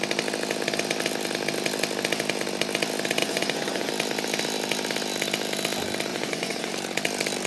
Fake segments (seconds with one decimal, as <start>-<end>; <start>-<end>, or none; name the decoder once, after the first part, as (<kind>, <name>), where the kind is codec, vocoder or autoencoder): 3.2-3.9 (vocoder, Vocos); 6.1-6.7